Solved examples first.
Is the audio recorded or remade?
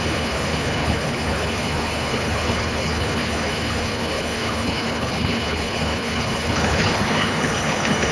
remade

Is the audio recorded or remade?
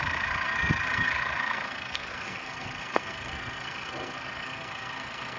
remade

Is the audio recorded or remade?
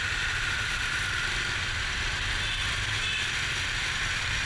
recorded